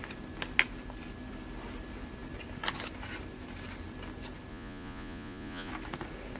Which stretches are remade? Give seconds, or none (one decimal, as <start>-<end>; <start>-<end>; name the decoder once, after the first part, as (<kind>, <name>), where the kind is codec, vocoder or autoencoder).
4.5-5.7 (vocoder, Vocos)